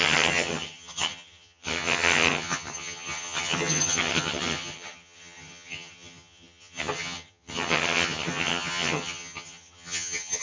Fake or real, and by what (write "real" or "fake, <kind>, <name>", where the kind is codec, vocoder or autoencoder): fake, vocoder, HiFi-GAN